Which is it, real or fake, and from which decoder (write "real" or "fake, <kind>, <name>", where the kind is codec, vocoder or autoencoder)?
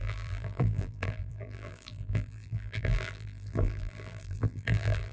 fake, vocoder, BigVGAN v2